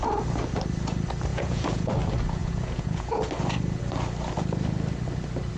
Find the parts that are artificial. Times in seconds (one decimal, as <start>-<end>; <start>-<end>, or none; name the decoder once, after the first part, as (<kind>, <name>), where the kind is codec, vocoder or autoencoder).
1.3-1.9 (vocoder, Vocos); 2.4-3.2